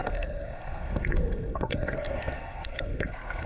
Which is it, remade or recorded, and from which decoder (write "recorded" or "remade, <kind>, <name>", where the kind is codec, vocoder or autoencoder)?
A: remade, codec, SNAC